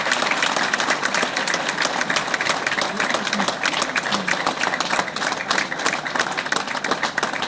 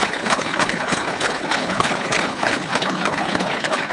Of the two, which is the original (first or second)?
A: first